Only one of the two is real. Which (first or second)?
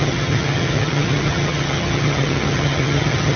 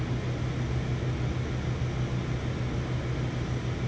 second